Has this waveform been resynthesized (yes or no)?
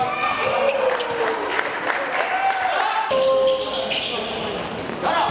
no